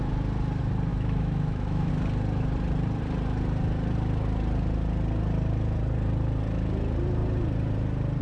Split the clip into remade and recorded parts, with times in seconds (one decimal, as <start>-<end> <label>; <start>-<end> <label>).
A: 0.0-0.9 recorded; 0.9-1.9 remade; 1.9-8.2 recorded